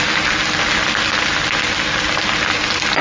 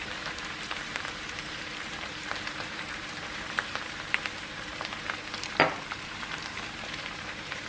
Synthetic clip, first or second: second